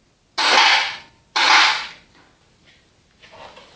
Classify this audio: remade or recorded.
recorded